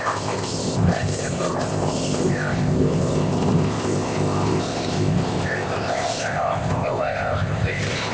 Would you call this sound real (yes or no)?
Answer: no